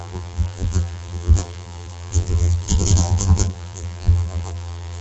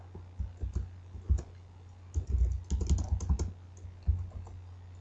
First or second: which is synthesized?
first